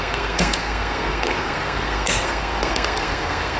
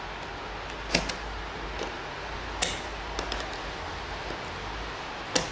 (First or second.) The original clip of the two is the second